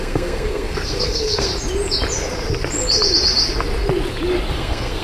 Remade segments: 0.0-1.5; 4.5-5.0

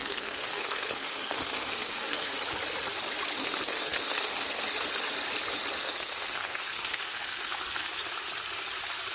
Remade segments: 0.0-2.3; 3.4-4.6; 5.8-7.9